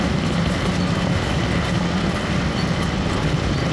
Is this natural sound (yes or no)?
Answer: yes